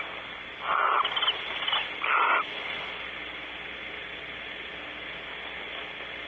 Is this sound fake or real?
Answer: real